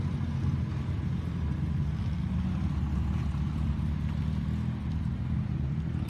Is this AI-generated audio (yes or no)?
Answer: no